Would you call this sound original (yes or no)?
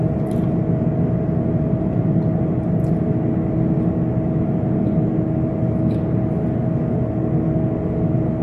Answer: yes